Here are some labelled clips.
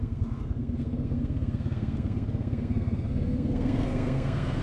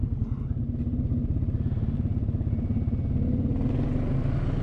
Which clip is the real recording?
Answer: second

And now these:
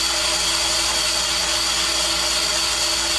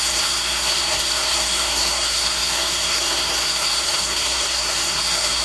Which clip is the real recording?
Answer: first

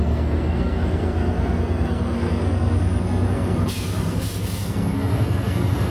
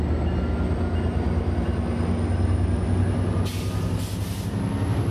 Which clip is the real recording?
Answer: second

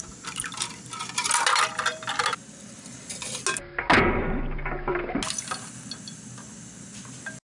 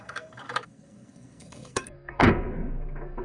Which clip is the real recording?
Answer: first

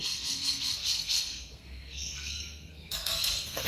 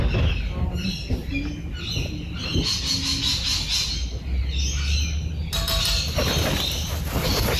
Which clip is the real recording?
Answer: second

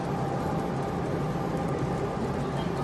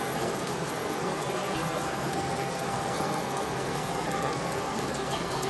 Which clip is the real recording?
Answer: first